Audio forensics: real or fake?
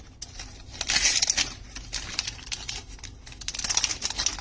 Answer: real